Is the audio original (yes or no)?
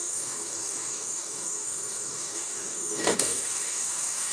no